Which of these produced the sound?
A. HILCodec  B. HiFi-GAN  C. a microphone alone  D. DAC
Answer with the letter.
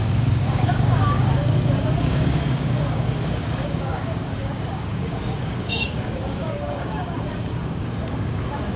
D